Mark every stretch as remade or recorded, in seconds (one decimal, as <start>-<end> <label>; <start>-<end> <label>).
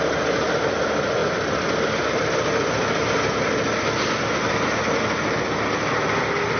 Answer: 0.0-6.6 recorded